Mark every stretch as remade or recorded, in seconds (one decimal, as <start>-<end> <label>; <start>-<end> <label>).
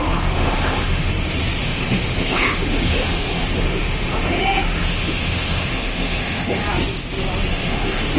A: 0.0-1.1 remade; 1.1-1.6 recorded; 1.6-6.6 remade; 6.6-7.5 recorded; 7.5-8.2 remade